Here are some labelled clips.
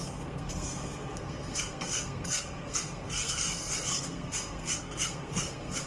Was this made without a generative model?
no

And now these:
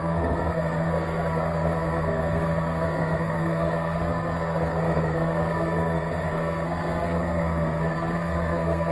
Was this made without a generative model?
no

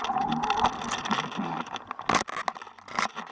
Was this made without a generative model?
yes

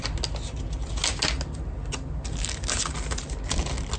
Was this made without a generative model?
yes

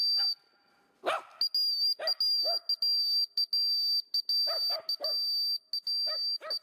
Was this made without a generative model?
yes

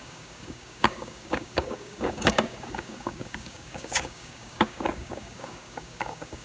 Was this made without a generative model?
no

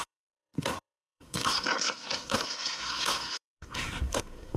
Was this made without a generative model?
no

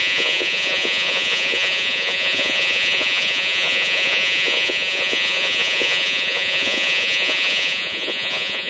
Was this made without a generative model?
no